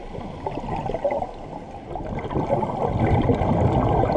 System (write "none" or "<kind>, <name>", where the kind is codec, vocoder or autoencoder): none